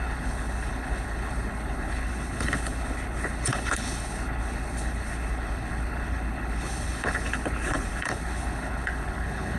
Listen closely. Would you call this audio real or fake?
fake